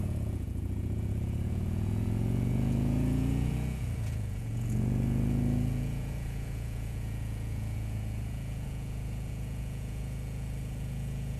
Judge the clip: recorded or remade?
remade